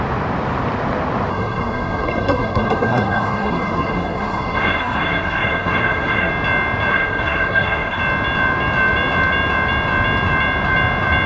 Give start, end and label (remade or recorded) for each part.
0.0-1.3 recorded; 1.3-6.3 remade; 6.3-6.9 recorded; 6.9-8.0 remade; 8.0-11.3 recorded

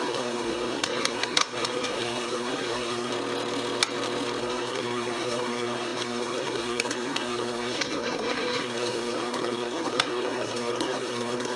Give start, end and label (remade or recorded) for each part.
0.0-3.1 remade; 3.1-4.4 recorded; 4.4-11.6 remade

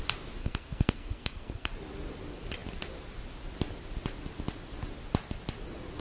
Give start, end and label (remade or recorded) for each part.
0.0-0.4 recorded; 0.4-1.7 remade; 1.7-6.0 recorded

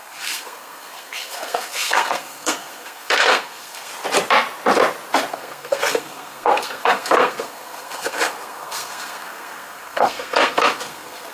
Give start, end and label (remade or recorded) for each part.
0.0-3.9 remade; 3.9-5.3 recorded; 5.3-11.3 remade

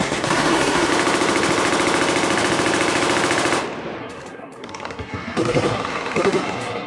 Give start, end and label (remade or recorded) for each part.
0.0-0.9 remade; 0.9-4.0 recorded; 4.0-6.9 remade

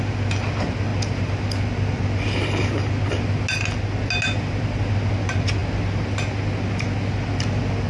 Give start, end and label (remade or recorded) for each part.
0.0-7.9 recorded

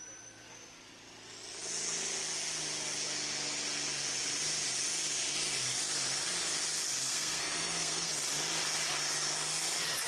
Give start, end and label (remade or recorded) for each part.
0.0-7.0 recorded; 7.0-8.1 remade; 8.1-10.1 recorded